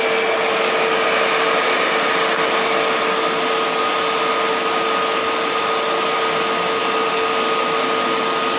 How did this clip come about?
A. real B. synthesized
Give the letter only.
A